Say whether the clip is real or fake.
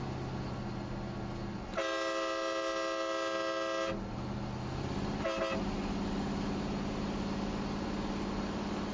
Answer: real